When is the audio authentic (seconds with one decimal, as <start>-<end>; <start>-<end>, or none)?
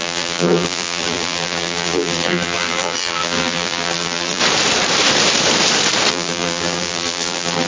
4.4-6.1